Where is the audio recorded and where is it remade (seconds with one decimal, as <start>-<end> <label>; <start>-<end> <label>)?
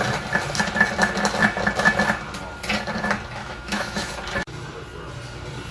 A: 0.0-3.4 recorded; 3.4-4.1 remade; 4.1-5.7 recorded